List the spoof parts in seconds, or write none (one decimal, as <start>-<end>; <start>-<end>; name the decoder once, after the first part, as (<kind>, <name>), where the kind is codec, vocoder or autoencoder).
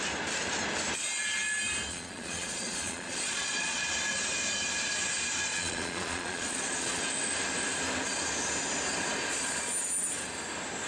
1.9-3.8 (vocoder, Vocos); 5.5-7.0